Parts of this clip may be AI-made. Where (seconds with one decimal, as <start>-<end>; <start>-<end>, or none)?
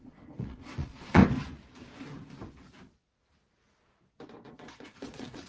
0.0-1.2; 4.5-5.5